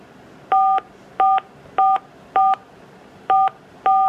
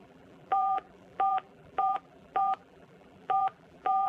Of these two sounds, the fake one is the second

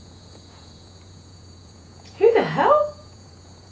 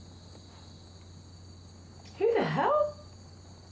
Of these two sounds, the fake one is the first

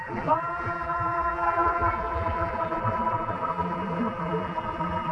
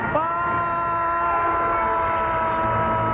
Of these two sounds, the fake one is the first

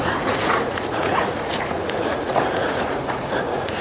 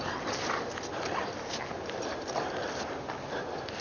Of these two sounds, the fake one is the first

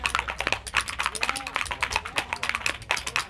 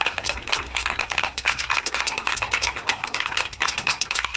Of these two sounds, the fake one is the second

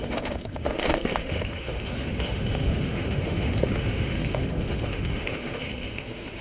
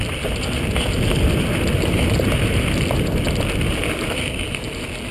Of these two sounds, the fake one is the first